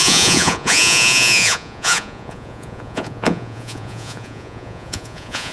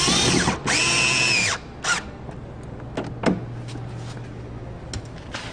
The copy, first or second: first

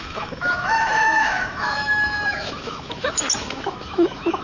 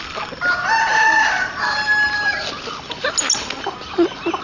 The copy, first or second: first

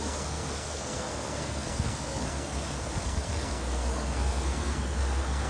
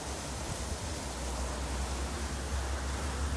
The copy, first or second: first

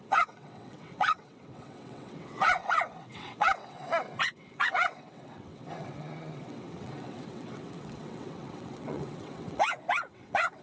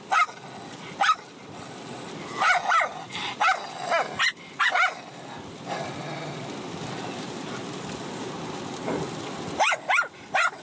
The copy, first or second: first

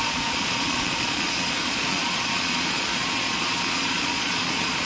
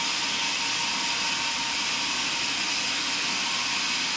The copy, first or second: first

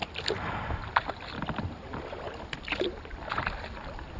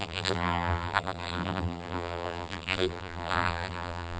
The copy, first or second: second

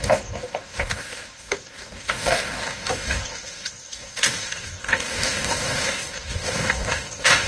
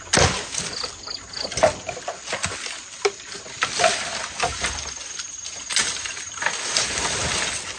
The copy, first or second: first